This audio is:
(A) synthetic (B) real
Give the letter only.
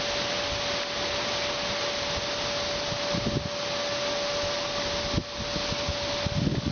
B